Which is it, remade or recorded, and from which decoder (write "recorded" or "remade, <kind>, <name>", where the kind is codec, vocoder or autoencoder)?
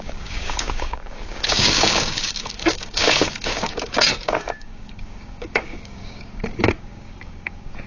remade, codec, DAC